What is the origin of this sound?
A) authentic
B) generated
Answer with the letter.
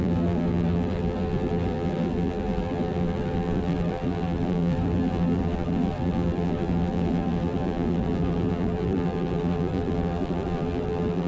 B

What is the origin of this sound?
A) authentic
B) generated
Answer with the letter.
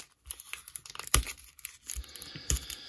A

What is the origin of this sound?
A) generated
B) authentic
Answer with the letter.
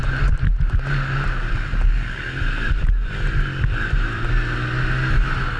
B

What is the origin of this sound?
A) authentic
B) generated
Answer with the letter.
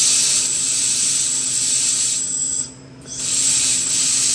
B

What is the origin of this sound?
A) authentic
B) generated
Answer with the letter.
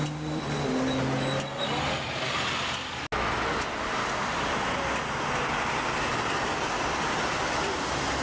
A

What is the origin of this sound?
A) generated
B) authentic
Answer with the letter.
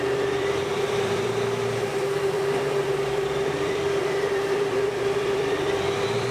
A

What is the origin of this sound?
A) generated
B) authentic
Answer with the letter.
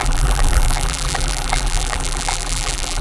A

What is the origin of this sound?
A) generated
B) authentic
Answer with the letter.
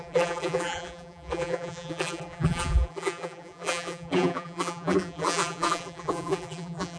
A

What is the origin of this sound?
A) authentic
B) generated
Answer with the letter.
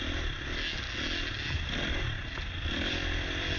A